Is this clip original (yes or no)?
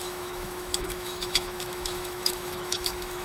no